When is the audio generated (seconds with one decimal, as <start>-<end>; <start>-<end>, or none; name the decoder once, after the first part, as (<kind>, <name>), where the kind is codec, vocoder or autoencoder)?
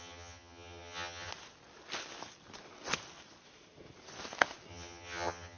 0.0-1.3 (vocoder, HiFi-GAN); 4.7-5.6